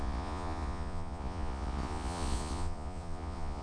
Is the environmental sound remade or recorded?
remade